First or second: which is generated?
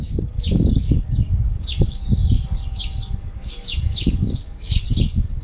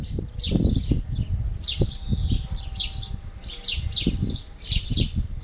first